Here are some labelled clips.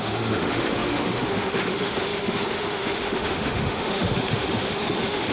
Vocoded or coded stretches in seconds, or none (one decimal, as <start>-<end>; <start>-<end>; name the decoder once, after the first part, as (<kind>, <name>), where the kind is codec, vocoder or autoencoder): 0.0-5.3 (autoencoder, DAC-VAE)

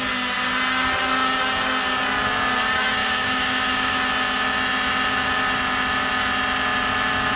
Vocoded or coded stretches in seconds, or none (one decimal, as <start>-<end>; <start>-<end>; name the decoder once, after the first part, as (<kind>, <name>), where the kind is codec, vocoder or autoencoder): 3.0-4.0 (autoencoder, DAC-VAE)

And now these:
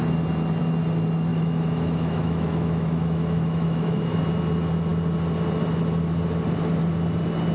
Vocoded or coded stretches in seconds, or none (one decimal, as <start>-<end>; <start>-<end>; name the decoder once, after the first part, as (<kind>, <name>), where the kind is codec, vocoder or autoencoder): 1.3-4.2 (autoencoder, DAC-VAE)